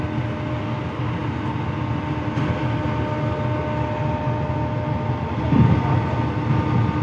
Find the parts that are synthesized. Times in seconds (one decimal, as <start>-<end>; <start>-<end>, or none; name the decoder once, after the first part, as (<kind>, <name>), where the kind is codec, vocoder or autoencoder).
none